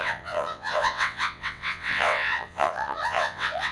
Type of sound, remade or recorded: remade